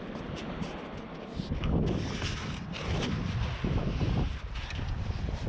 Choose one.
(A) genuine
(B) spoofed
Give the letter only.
A